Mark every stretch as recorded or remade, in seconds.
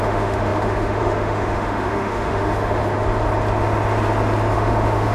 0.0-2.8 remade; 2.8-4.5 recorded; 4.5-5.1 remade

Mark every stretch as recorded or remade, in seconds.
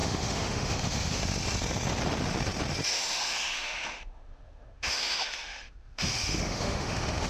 0.0-1.2 remade; 1.2-2.9 recorded; 2.9-7.3 remade